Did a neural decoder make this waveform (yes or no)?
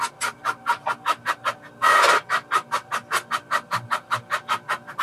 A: no